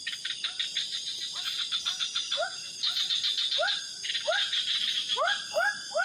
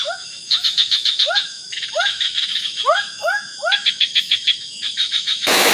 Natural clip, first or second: first